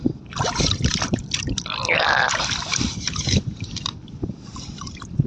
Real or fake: fake